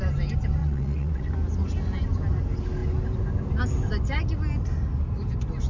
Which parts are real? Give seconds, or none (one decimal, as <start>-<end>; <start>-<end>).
0.0-0.6; 1.3-5.7